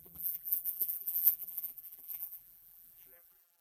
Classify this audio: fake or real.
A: fake